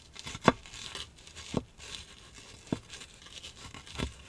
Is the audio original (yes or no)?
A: yes